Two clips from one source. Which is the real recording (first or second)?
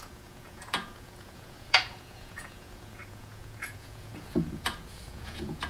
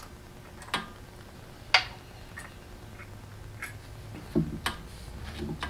second